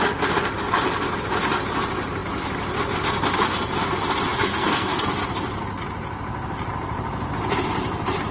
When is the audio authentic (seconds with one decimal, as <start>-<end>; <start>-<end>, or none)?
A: 0.0-4.3; 5.0-8.3